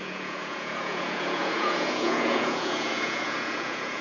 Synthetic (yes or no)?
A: yes